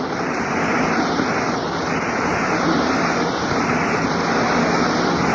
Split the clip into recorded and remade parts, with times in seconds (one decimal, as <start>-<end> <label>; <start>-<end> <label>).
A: 0.0-5.3 recorded